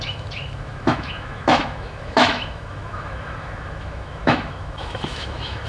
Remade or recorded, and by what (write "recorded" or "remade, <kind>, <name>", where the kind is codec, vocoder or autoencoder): remade, autoencoder, DAC-VAE